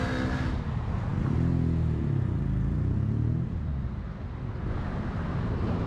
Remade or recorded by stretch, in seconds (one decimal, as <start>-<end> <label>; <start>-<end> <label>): 0.0-5.9 recorded